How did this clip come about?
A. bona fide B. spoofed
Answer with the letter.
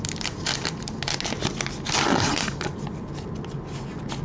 A